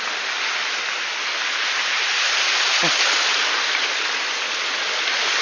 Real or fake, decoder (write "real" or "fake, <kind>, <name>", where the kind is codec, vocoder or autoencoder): real